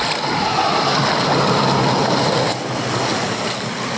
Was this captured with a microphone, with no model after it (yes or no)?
yes